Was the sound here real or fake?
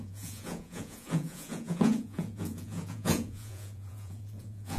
fake